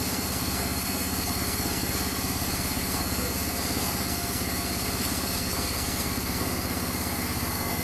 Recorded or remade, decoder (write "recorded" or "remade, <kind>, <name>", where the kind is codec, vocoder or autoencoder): remade, codec, SNAC